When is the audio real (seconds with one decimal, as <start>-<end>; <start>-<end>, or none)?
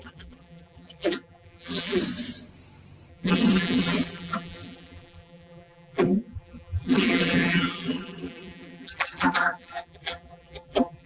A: 2.0-3.1